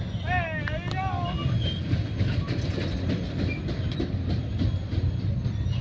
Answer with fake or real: real